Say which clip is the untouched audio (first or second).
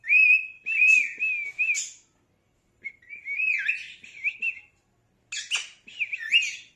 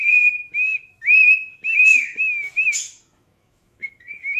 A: first